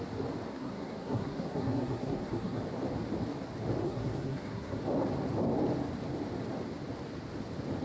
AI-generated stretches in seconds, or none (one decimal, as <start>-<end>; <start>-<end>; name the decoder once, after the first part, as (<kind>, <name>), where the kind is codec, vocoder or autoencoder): 0.5-2.6 (codec, SNAC); 3.8-4.8